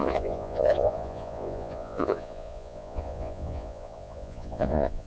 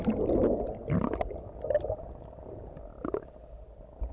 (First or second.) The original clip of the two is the second